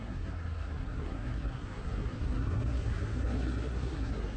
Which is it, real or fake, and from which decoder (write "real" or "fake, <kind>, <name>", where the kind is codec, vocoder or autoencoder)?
fake, codec, SNAC